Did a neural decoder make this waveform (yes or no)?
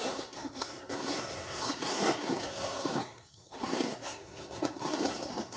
yes